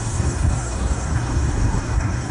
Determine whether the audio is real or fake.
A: fake